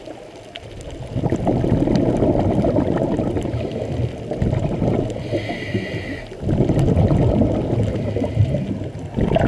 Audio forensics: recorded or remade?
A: recorded